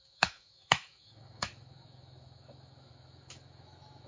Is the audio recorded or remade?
remade